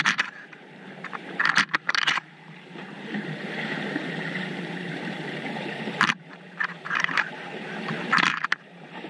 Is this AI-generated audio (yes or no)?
yes